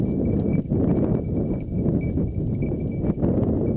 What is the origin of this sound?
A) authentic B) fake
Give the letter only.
A